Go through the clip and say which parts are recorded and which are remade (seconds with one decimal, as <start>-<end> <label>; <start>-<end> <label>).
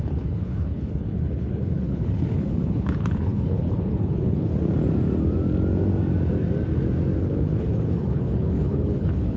0.0-4.5 remade; 4.5-7.2 recorded; 7.2-9.4 remade